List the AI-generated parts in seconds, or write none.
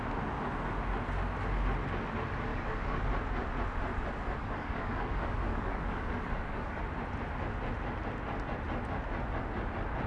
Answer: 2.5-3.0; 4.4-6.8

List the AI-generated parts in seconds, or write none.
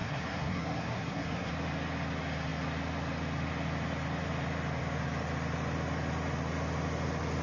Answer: 0.0-1.5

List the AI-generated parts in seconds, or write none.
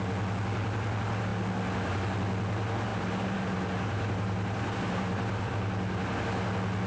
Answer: 2.9-5.5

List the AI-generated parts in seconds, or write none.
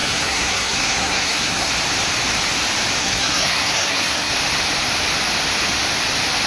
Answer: 0.0-1.7; 3.0-4.3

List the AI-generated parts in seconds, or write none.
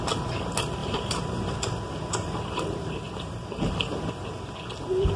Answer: 0.8-3.9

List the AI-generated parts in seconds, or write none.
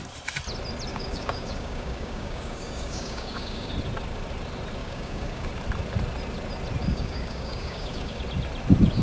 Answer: 0.9-3.7; 4.8-5.5; 6.9-8.2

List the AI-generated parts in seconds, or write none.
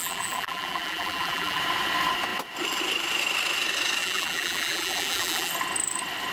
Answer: 0.0-1.6; 4.0-5.5